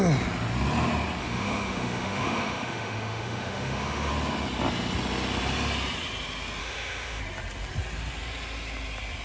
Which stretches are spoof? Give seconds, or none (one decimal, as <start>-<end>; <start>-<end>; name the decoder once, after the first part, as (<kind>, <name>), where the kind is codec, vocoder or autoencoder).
1.2-4.1 (autoencoder, DAC-VAE); 6.6-7.2